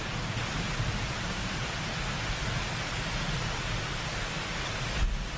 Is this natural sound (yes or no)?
yes